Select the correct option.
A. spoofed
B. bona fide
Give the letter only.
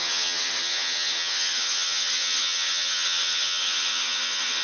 A